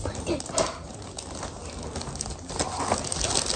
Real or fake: real